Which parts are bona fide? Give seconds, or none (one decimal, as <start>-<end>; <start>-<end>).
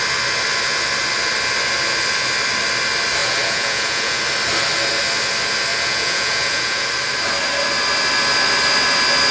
0.0-3.2; 4.2-5.7; 6.9-9.3